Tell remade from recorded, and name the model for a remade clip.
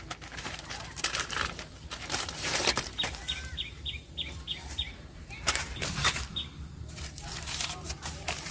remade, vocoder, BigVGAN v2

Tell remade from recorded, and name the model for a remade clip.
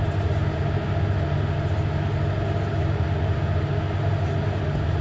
recorded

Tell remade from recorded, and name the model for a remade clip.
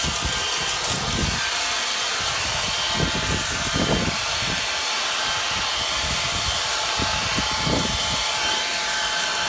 recorded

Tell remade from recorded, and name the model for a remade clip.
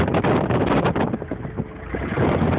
recorded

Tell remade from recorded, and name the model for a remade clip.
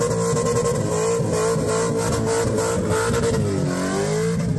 recorded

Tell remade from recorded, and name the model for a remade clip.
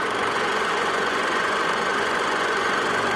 remade, vocoder, Vocos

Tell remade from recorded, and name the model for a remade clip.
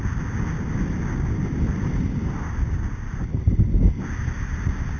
recorded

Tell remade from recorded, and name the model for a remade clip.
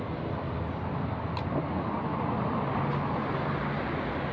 recorded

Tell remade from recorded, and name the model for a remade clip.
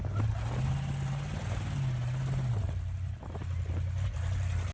recorded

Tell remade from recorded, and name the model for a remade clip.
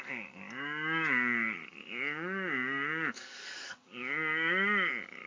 remade, codec, DAC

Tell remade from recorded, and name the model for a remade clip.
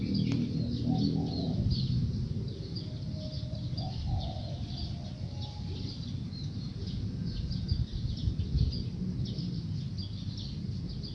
recorded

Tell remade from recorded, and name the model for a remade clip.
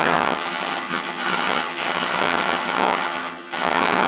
remade, vocoder, HiFi-GAN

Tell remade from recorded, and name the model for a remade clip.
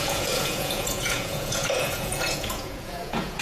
remade, vocoder, Vocos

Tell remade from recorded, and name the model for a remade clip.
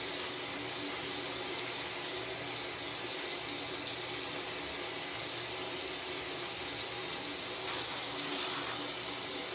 recorded